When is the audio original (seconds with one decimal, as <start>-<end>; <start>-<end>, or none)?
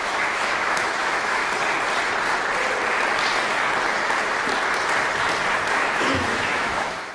1.4-5.7